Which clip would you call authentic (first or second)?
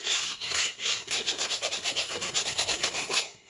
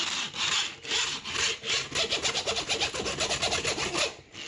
second